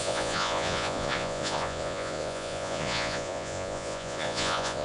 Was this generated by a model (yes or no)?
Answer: yes